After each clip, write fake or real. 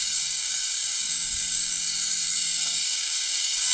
fake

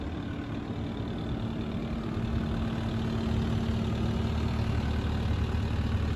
real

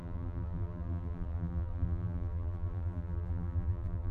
fake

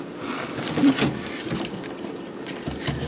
fake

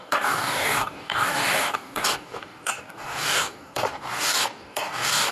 fake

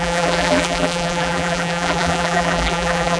fake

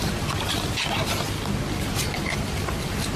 real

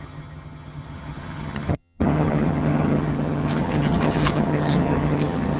fake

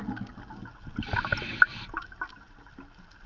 real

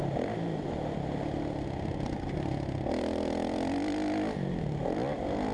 real